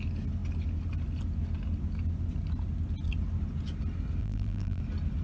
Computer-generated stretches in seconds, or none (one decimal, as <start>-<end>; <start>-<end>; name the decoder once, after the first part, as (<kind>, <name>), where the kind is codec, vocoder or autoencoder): 4.2-4.8 (vocoder, BigVGAN v2)